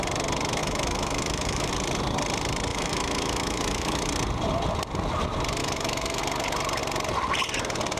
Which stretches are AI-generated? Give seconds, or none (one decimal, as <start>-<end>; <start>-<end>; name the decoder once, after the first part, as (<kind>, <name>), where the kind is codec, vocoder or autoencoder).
0.6-1.7 (autoencoder, DAC-VAE); 2.7-4.1; 5.6-6.2